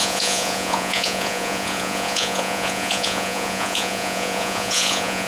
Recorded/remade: remade